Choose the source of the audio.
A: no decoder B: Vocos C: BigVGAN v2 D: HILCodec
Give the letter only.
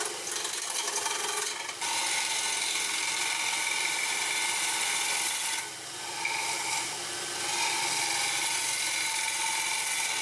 C